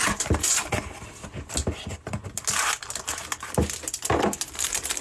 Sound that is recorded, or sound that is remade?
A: recorded